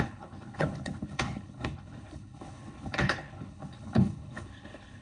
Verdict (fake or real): fake